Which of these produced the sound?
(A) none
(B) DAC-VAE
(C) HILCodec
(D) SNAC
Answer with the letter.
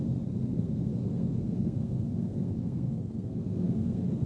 D